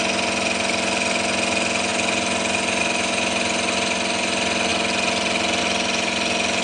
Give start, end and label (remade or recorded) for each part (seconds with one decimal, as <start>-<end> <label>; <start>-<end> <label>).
0.0-6.6 recorded